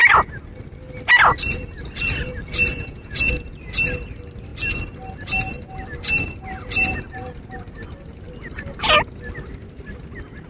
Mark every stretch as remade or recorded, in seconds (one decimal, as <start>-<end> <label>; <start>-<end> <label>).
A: 0.0-2.7 recorded; 2.7-3.3 remade; 3.3-10.5 recorded